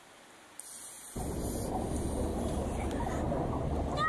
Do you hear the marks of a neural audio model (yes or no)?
no